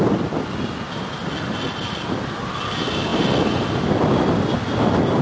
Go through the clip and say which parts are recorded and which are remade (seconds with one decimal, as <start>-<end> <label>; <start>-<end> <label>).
0.0-5.2 recorded